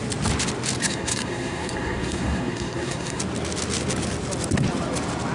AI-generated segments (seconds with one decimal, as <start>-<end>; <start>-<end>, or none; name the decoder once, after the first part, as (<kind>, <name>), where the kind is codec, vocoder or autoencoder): 0.8-3.2 (codec, SNAC)